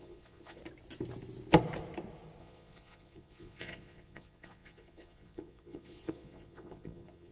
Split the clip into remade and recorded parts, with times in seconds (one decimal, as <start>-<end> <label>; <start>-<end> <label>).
0.0-0.6 remade; 0.6-2.4 recorded; 2.4-7.3 remade